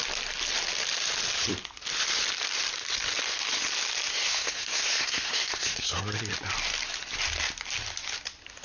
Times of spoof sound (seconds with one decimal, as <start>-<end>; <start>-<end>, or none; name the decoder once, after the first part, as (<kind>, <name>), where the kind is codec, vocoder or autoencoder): 4.1-6.0 (codec, SNAC)